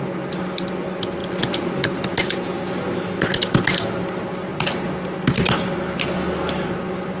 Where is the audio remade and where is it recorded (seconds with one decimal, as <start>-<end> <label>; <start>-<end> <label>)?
0.0-7.2 recorded